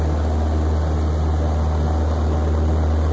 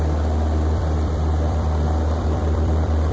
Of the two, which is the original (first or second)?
first